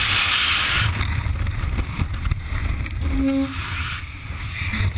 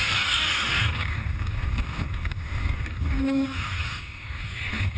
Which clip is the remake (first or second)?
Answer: second